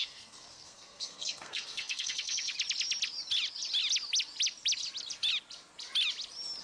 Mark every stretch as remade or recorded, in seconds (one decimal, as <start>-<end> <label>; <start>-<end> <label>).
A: 0.0-2.5 remade; 2.5-6.6 recorded